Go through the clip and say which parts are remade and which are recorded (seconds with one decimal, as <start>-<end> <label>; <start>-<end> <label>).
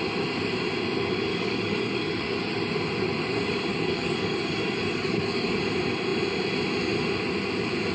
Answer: 0.0-1.3 recorded; 1.3-2.6 remade; 2.6-3.7 recorded; 3.7-5.6 remade; 5.6-7.9 recorded